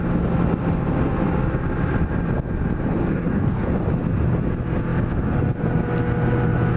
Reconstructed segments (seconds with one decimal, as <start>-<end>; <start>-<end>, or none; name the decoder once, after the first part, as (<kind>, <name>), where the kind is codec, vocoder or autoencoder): 3.1-3.7 (codec, DAC)